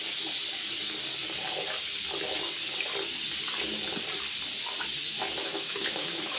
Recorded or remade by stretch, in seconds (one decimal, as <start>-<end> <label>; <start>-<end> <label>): 0.0-5.4 recorded; 5.4-6.4 remade